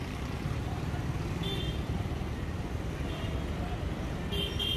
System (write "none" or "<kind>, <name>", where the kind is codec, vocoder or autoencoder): none